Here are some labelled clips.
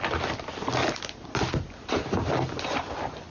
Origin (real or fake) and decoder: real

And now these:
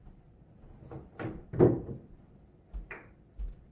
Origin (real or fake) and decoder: real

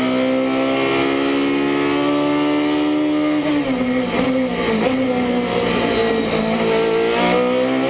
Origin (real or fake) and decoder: real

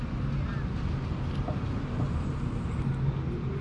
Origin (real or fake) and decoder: real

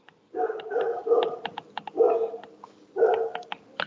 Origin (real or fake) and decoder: real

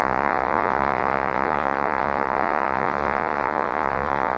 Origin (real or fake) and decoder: fake, vocoder, Vocos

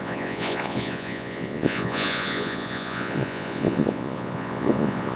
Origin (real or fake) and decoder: fake, vocoder, Vocos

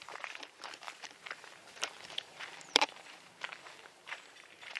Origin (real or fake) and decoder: fake, vocoder, BigVGAN v2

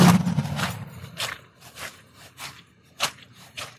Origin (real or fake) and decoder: fake, vocoder, BigVGAN v2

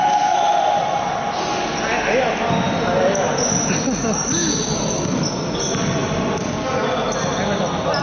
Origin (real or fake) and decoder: real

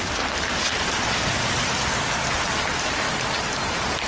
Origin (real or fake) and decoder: real